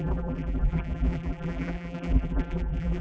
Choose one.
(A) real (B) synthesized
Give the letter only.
B